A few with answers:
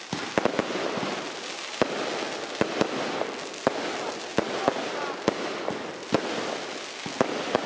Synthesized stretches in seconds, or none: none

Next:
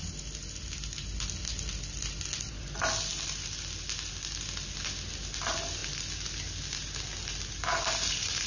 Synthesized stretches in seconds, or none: none

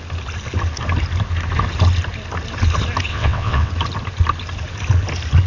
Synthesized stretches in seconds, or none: 3.1-3.7 (vocoder, WaveNeXt)

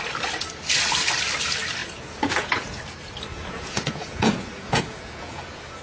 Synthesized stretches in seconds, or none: 1.8-2.8 (vocoder, Vocos); 3.3-5.8

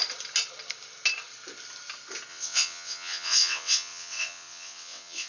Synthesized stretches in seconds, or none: 2.3-5.3 (vocoder, WaveNeXt)

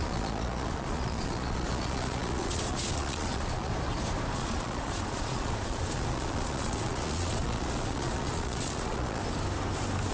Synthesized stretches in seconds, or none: 0.0-3.7 (vocoder, Vocos); 4.3-9.2

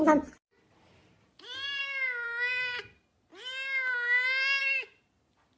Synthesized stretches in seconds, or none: none

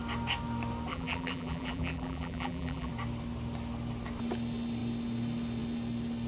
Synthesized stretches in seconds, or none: 0.9-2.9 (vocoder, BigVGAN v2)